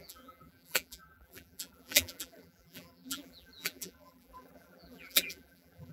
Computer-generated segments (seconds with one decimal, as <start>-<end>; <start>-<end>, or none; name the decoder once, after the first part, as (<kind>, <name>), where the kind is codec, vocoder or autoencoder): 0.0-5.9 (vocoder, BigVGAN v2)